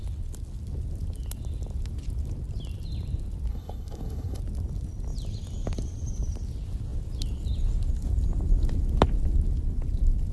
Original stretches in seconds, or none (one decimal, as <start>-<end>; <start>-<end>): 0.0-3.5; 4.4-10.3